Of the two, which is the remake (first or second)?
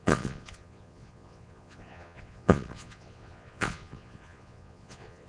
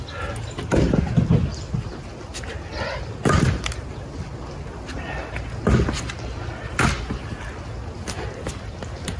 first